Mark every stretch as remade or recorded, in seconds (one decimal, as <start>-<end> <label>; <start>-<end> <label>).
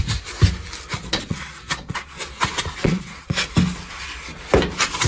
0.0-1.0 recorded; 1.0-2.4 remade; 2.4-2.8 recorded; 2.8-3.5 remade; 3.5-5.1 recorded